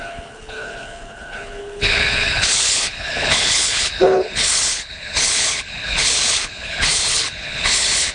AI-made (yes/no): yes